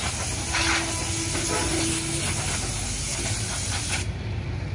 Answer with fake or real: real